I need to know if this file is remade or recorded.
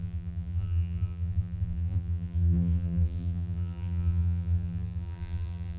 remade